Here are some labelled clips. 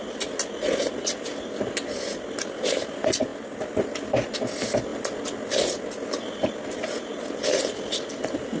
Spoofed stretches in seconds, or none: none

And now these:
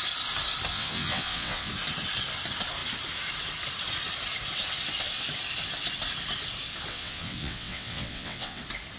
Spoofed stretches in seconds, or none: 0.7-1.7 (vocoder, WaveNeXt); 6.9-8.6

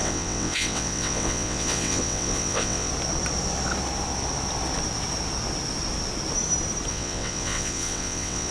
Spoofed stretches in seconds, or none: 0.0-2.9 (vocoder, WaveNeXt); 6.9-8.5

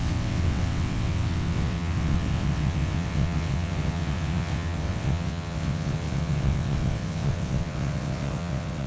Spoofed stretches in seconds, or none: 0.0-8.9 (vocoder, WaveNeXt)